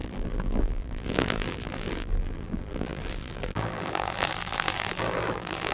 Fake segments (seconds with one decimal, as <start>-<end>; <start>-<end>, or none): 0.0-5.7